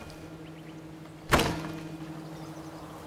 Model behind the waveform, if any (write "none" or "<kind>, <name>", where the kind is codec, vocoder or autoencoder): none